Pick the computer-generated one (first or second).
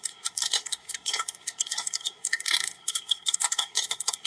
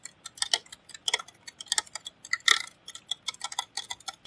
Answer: first